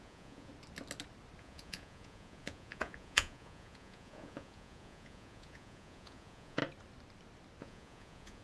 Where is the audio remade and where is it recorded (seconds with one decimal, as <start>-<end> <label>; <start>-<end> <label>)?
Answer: 0.0-0.5 remade; 0.5-1.4 recorded; 1.4-6.6 remade; 6.6-7.6 recorded; 7.6-8.4 remade

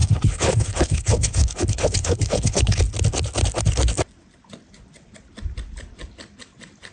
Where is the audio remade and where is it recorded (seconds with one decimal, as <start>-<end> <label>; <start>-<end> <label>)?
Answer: 0.0-2.8 remade; 2.8-6.9 recorded

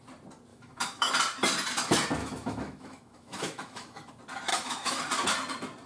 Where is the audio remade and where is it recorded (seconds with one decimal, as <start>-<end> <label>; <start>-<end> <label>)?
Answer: 0.0-0.5 recorded; 0.5-1.1 remade; 1.1-2.2 recorded; 2.2-4.1 remade; 4.1-4.5 recorded; 4.5-5.0 remade; 5.0-5.9 recorded

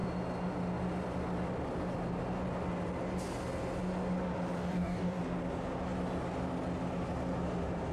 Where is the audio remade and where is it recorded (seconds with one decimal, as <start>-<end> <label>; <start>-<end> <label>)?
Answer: 0.0-4.6 recorded; 4.6-5.2 remade; 5.2-7.9 recorded

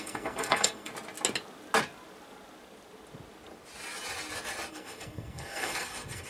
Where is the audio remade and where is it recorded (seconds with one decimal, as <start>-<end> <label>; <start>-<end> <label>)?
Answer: 0.0-0.9 remade; 0.9-4.7 recorded; 4.7-6.3 remade

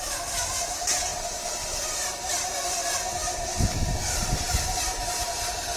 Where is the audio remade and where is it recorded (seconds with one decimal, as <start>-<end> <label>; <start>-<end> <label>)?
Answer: 0.0-5.8 remade

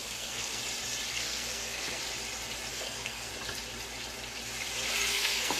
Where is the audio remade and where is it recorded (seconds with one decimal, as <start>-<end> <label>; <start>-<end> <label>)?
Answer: 0.0-0.6 remade; 0.6-1.1 recorded; 1.1-2.0 remade; 2.0-2.7 recorded; 2.7-3.3 remade; 3.3-5.0 recorded; 5.0-5.6 remade